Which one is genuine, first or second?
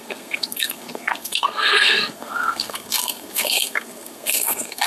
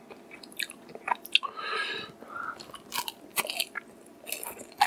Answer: second